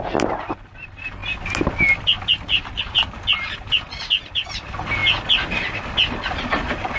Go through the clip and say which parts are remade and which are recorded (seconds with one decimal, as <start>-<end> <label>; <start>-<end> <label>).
0.0-7.0 recorded